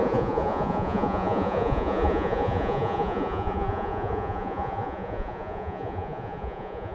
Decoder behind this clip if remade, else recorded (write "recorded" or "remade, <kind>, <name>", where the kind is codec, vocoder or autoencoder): remade, vocoder, Vocos